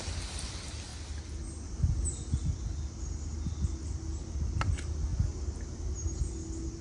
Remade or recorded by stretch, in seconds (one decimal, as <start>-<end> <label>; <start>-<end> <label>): 0.0-6.8 recorded

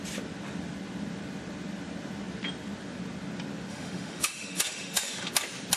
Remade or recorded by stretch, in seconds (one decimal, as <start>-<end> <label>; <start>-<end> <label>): 0.0-3.7 recorded; 3.7-5.3 remade; 5.3-5.8 recorded

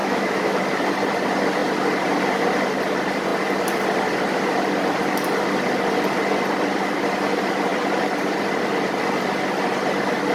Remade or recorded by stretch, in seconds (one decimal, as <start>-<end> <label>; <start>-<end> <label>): 0.0-0.6 remade; 0.6-10.3 recorded

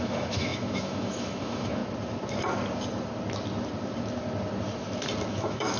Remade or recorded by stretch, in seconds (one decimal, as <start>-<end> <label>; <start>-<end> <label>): 0.0-1.8 remade; 1.8-5.3 recorded; 5.3-5.8 remade

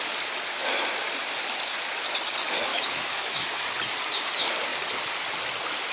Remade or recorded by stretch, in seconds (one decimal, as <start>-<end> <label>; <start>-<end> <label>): 0.0-2.7 recorded; 2.7-3.7 remade; 3.7-5.9 recorded

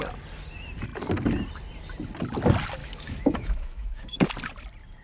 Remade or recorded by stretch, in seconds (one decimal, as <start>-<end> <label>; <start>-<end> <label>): 0.0-2.8 recorded; 2.8-4.3 remade; 4.3-5.0 recorded

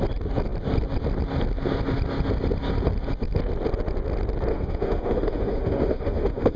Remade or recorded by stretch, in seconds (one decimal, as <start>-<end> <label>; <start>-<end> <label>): 0.0-4.5 recorded; 4.5-6.6 remade